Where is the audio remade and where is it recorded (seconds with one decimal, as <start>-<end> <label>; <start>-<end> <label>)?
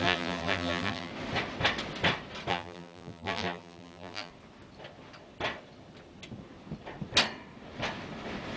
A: 0.0-1.1 remade; 1.1-2.5 recorded; 2.5-4.3 remade; 4.3-8.6 recorded